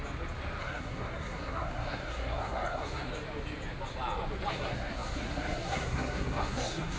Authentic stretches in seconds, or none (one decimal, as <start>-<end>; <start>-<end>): 0.0-0.6; 3.1-4.5